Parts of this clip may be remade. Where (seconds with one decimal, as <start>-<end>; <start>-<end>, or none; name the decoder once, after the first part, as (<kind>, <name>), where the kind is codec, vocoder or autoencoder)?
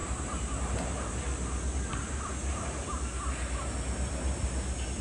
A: 0.0-3.0 (vocoder, BigVGAN v2)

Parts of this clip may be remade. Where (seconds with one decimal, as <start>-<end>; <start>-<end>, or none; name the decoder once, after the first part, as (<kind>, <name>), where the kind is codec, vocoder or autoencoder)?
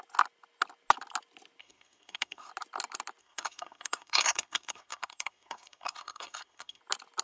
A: 1.6-2.5 (codec, SNAC); 3.2-6.8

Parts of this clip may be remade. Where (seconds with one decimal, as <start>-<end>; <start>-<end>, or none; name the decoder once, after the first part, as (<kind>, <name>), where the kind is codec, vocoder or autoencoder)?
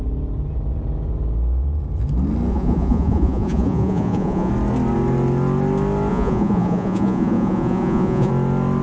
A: 2.5-4.5 (vocoder, Vocos); 6.1-8.3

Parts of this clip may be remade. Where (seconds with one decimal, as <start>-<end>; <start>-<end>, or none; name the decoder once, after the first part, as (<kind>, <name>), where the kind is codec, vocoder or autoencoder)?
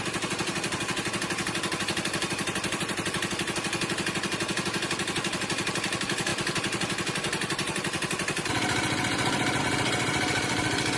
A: none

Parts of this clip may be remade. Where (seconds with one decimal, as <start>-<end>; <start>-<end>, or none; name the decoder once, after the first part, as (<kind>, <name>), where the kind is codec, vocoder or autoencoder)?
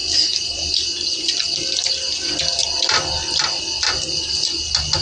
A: 2.6-3.6 (vocoder, BigVGAN v2)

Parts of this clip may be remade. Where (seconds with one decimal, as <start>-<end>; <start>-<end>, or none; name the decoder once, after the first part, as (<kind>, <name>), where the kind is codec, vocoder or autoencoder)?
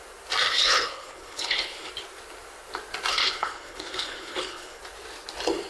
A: 0.5-1.9 (codec, HILCodec); 3.1-4.8